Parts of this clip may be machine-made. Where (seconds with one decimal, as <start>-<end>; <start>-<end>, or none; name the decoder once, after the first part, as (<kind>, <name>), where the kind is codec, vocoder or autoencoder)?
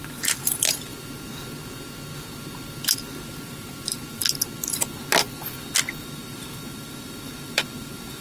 0.0-0.9 (vocoder, BigVGAN v2); 3.1-4.2; 6.0-8.2